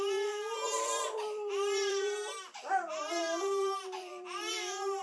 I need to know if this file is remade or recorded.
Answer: remade